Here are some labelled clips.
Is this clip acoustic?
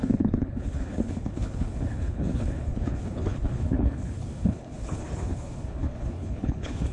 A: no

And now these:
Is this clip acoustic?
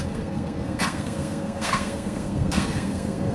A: no